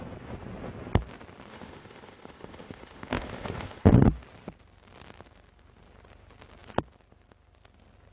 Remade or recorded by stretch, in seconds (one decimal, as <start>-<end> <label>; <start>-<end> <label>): 0.0-1.5 recorded; 1.5-3.9 remade; 3.9-8.1 recorded